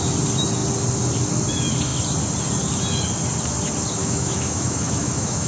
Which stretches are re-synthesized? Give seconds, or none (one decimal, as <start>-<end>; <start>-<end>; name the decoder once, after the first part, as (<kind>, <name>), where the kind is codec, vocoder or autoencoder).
4.0-5.5 (autoencoder, DAC-VAE)